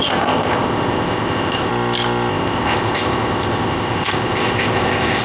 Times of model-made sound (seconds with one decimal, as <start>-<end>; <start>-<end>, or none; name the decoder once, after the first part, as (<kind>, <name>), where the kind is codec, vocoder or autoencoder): 0.0-1.7 (codec, ZipCodec); 2.3-5.2